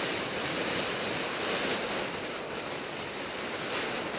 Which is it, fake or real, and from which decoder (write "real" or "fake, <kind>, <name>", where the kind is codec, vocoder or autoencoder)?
real